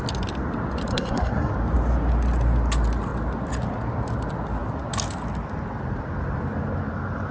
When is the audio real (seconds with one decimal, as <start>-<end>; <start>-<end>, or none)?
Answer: 0.0-0.9; 1.5-7.3